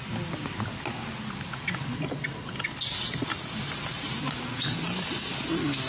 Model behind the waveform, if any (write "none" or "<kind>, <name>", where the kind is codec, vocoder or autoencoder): none